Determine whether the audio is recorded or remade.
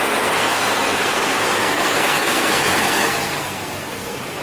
remade